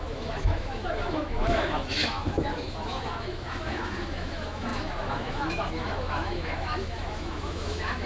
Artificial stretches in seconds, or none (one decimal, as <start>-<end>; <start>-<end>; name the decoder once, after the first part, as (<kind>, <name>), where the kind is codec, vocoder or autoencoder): 0.0-8.1 (autoencoder, DAC-VAE)

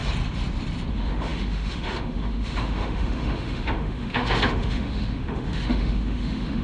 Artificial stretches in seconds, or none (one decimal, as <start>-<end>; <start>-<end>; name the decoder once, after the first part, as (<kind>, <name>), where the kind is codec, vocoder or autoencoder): 0.9-6.6 (autoencoder, DAC-VAE)

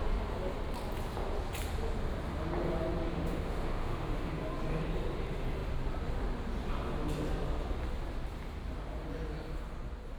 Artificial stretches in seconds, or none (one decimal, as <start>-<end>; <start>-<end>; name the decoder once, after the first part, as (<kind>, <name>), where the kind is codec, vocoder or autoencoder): 3.1-4.3 (autoencoder, DAC-VAE)

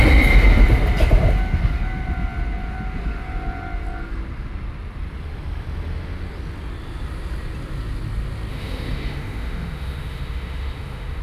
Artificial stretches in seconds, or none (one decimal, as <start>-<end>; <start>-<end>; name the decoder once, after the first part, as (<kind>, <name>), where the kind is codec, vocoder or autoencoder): 8.5-11.2 (autoencoder, DAC-VAE)

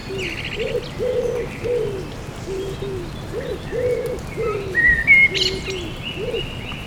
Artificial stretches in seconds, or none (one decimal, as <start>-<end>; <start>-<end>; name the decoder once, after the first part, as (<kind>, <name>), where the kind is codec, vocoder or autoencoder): none

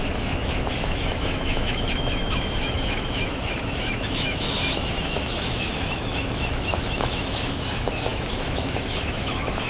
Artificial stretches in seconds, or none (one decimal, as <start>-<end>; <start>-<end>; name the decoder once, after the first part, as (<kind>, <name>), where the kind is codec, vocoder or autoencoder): 0.0-9.7 (autoencoder, DAC-VAE)

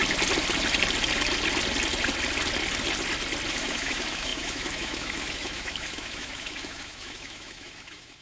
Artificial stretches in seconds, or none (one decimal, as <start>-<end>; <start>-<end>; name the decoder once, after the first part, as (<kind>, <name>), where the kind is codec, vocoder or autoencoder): 3.5-8.2 (autoencoder, DAC-VAE)

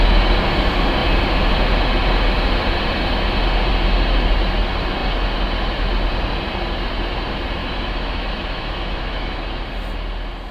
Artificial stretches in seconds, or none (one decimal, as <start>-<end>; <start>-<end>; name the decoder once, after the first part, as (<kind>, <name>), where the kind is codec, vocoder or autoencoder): 7.6-9.4 (autoencoder, DAC-VAE)